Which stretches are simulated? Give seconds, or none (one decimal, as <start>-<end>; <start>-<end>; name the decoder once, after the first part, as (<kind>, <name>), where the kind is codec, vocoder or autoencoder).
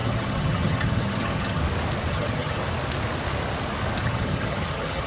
0.0-1.6 (vocoder, HiFi-GAN); 2.1-2.6; 4.0-5.1